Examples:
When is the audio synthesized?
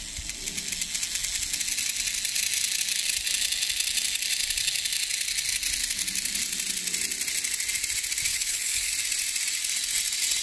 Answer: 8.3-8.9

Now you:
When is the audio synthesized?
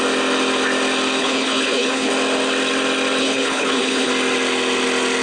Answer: 1.2-2.1; 3.2-4.1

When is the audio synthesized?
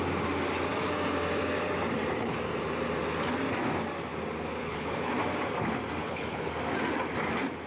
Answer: 4.6-5.1; 6.0-6.5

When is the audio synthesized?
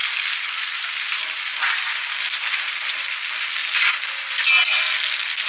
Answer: none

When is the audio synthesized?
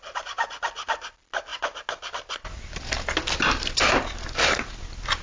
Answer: none